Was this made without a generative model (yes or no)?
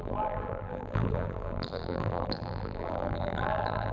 no